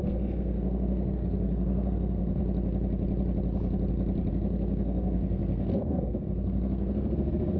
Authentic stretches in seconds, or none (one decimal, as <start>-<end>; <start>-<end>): 2.4-4.3